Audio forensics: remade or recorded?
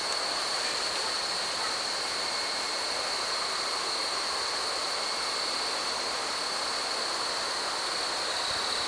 recorded